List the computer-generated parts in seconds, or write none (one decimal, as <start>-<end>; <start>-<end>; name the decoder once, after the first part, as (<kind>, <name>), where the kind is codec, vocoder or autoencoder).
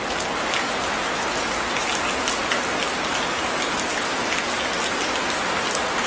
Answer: none